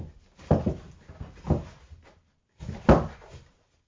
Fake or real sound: real